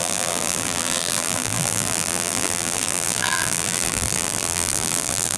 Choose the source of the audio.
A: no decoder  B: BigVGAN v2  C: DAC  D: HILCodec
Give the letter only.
B